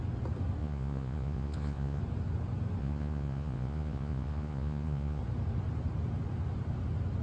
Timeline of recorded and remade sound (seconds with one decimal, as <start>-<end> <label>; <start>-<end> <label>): 0.0-0.6 recorded; 0.6-2.0 remade; 2.0-2.8 recorded; 2.8-5.2 remade; 5.2-7.2 recorded